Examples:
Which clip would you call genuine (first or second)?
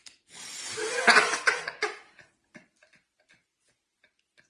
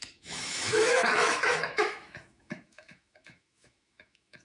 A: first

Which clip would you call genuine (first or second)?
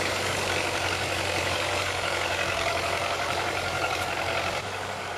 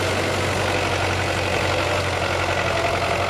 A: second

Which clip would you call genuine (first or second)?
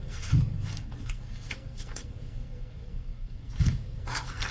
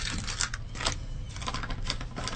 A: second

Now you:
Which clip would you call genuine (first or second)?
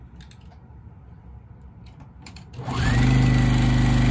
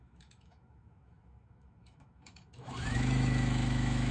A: first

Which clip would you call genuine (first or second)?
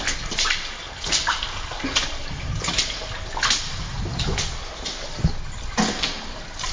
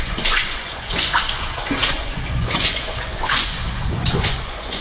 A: first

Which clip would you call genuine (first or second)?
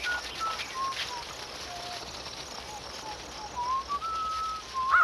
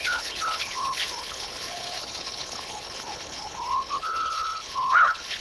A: first